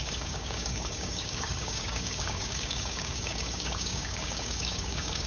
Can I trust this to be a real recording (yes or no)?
no